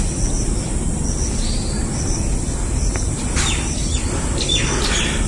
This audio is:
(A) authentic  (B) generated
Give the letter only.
A